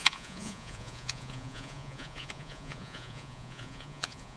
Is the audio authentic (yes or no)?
no